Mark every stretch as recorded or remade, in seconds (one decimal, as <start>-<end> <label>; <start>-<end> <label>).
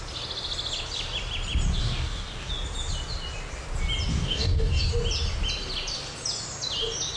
0.0-1.8 recorded; 1.8-2.5 remade; 2.5-4.1 recorded; 4.1-4.9 remade; 4.9-7.2 recorded